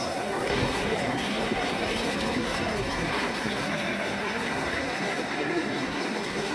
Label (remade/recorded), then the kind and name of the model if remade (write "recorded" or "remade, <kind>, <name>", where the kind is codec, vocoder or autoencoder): remade, codec, SNAC